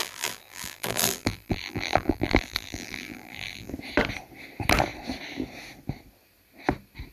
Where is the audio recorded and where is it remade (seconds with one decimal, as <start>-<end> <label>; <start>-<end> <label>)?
0.0-3.7 remade; 3.7-7.1 recorded